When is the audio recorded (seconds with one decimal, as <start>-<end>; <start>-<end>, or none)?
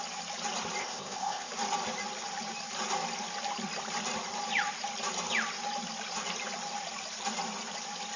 0.0-0.8; 1.5-8.2